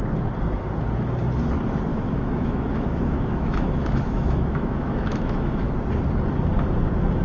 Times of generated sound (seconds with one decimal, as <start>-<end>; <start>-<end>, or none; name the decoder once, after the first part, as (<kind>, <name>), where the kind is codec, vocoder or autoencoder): 1.9-5.7 (autoencoder, DAC-VAE)